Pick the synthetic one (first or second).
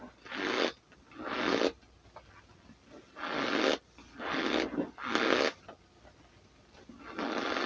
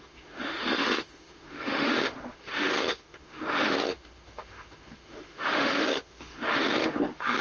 second